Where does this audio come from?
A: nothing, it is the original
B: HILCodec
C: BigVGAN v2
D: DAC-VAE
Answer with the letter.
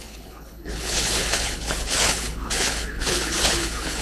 B